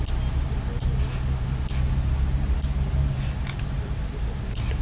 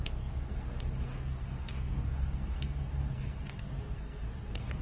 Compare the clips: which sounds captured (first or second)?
first